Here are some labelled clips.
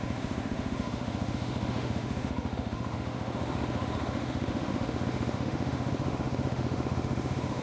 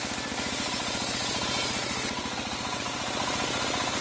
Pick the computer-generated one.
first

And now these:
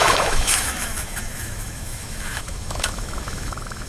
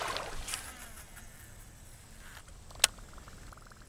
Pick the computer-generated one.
first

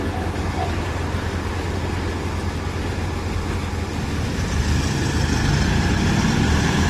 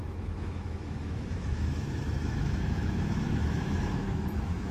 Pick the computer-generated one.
second